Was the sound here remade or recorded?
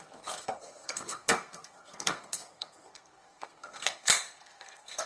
remade